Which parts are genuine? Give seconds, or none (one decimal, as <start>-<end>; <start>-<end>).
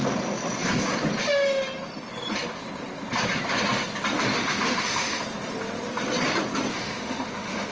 0.0-4.3; 5.2-6.7